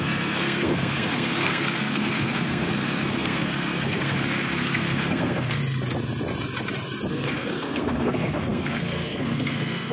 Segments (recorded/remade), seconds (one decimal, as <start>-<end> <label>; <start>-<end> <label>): 0.0-5.6 remade; 5.6-7.1 recorded; 7.1-9.9 remade